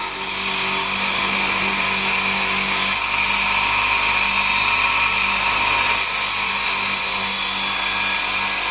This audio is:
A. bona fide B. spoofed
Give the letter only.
A